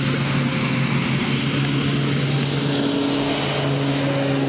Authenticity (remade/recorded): recorded